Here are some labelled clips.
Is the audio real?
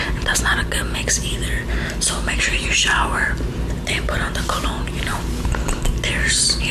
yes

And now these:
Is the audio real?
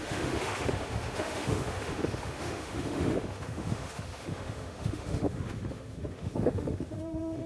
no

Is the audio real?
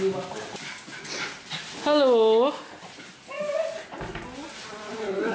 yes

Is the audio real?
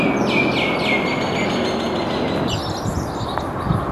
yes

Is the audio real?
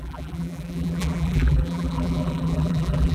no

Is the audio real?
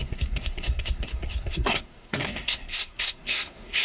no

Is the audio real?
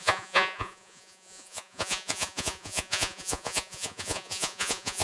no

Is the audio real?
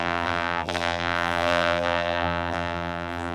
no